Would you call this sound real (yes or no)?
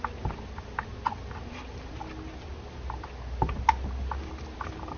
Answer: yes